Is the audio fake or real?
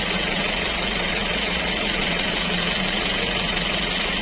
fake